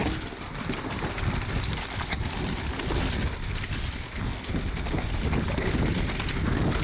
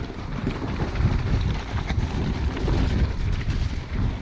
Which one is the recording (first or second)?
first